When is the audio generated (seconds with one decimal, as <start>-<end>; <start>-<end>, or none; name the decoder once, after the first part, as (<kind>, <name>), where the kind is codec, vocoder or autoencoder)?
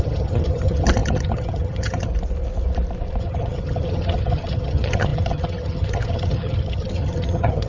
0.0-2.1 (vocoder, HiFi-GAN); 3.2-7.7